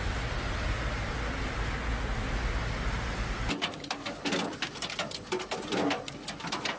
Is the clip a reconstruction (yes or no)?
no